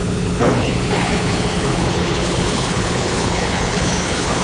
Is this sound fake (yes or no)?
yes